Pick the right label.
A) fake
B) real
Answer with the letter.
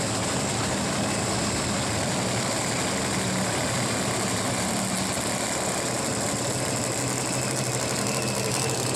B